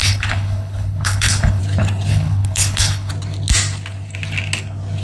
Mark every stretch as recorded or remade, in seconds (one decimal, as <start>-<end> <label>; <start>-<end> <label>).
0.0-1.6 remade; 1.6-2.1 recorded; 2.1-3.1 remade; 3.1-5.0 recorded